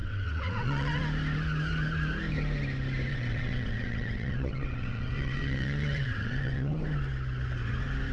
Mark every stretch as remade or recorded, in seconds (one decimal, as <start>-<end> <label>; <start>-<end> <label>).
0.0-1.0 remade; 1.0-3.1 recorded; 3.1-6.8 remade; 6.8-8.1 recorded

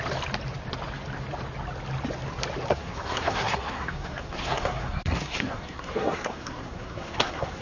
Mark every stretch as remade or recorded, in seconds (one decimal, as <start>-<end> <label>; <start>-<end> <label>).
0.0-2.7 recorded; 2.7-7.6 remade

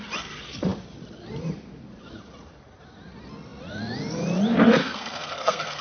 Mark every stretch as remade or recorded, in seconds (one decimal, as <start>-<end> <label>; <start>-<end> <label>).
0.0-4.8 recorded; 4.8-5.8 remade

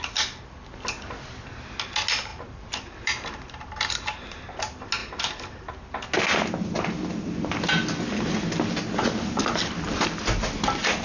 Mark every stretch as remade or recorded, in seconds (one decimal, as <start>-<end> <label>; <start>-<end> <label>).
0.0-2.3 recorded; 2.3-3.9 remade; 3.9-5.0 recorded; 5.0-5.7 remade; 5.7-11.0 recorded

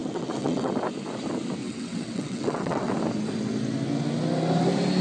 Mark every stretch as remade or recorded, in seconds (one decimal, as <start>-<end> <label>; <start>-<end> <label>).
0.0-0.7 remade; 0.7-1.6 recorded; 1.6-2.9 remade; 2.9-5.0 recorded